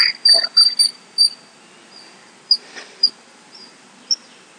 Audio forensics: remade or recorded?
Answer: recorded